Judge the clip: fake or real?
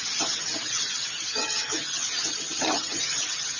fake